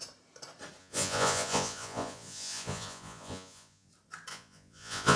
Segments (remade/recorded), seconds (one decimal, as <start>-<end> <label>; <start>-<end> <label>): 0.0-0.8 recorded; 0.8-3.9 remade; 3.9-4.3 recorded; 4.3-5.2 remade